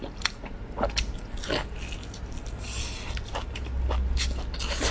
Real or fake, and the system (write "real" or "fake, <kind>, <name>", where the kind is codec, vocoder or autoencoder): real